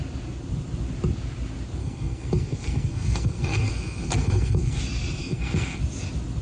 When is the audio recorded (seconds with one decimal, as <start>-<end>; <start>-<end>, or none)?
0.0-1.8; 4.8-5.2; 5.8-6.4